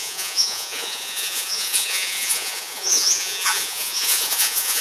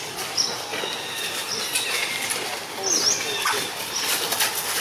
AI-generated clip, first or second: first